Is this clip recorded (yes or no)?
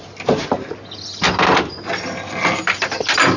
yes